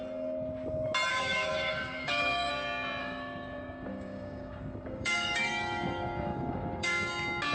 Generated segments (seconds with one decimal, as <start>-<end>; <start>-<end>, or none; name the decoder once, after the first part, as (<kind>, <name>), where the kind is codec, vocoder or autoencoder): 1.1-2.5 (codec, DAC); 3.0-7.1